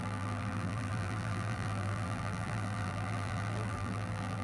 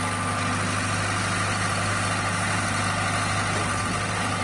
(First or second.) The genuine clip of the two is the second